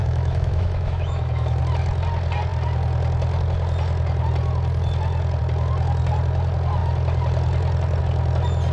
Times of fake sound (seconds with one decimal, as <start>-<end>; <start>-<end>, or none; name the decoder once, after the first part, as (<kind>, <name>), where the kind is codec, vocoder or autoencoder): 0.0-1.6 (autoencoder, DAC-VAE)